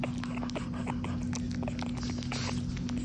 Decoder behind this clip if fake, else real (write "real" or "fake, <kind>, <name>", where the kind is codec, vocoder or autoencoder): real